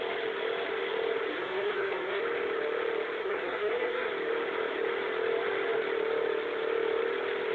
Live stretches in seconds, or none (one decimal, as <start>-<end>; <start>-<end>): 0.0-1.3; 2.2-3.2; 4.1-7.5